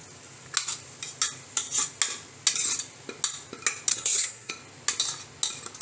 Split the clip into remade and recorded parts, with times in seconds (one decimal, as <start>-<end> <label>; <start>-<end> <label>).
0.0-3.9 recorded; 3.9-4.5 remade; 4.5-5.8 recorded